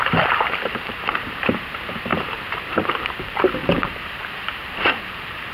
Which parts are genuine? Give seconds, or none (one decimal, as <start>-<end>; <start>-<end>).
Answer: none